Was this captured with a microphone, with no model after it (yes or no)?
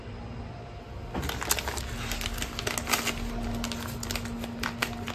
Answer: yes